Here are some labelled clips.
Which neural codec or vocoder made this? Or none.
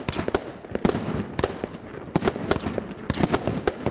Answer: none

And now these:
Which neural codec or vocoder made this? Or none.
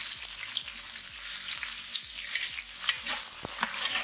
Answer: none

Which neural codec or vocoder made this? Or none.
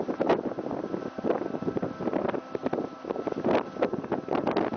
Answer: none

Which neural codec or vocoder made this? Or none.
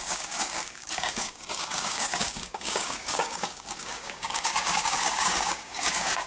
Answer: codec, DAC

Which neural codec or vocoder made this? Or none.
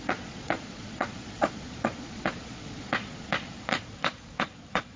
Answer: vocoder, Vocos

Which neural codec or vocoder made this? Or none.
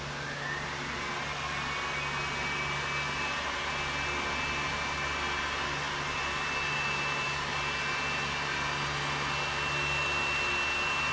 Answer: none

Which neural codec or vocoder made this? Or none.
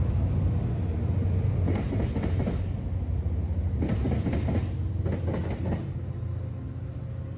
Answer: none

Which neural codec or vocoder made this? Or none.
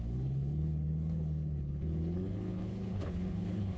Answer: codec, HILCodec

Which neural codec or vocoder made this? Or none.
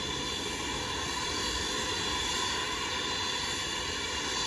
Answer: none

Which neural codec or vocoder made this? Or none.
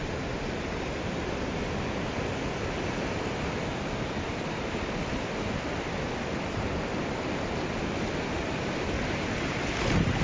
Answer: none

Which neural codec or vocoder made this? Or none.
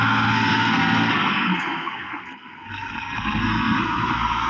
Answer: codec, SNAC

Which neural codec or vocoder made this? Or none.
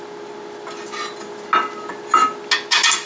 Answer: none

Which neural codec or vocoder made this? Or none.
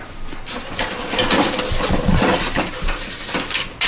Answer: none